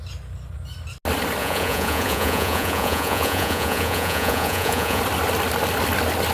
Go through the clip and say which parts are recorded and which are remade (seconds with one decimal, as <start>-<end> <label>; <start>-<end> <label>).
0.0-1.4 recorded; 1.4-5.0 remade; 5.0-6.3 recorded